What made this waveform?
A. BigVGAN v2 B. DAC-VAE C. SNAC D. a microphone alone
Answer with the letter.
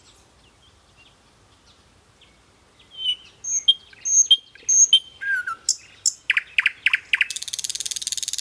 D